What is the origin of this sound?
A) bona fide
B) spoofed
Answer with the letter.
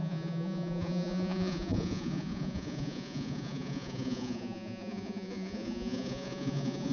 B